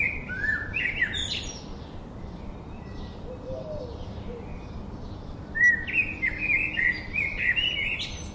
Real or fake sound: real